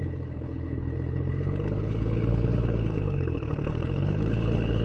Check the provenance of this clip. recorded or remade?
remade